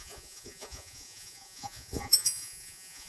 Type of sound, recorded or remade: remade